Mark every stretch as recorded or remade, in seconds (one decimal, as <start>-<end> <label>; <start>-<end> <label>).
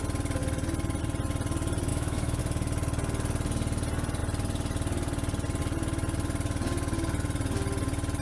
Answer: 0.0-1.9 recorded; 1.9-2.4 remade; 2.4-8.2 recorded